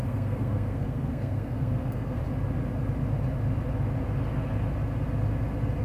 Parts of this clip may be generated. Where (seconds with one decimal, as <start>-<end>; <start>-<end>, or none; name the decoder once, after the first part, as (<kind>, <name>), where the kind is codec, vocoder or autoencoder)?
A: 0.0-2.2 (codec, SNAC)